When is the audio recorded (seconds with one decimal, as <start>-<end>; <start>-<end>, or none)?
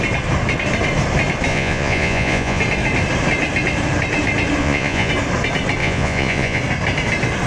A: 0.0-1.5; 2.6-4.6; 5.1-5.8; 6.6-7.5